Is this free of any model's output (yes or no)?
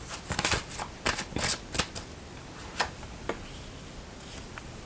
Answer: yes